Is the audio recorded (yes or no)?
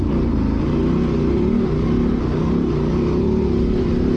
yes